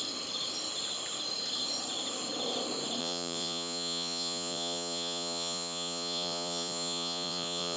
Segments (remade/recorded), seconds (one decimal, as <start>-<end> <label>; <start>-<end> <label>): 0.0-3.0 recorded; 3.0-7.8 remade